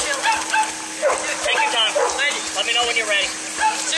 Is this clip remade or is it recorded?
recorded